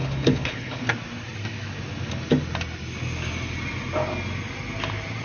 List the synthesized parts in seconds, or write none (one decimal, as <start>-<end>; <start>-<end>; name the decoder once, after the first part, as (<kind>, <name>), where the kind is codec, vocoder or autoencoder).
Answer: 0.0-0.8 (codec, HILCodec)